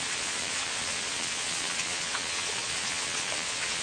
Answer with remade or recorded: remade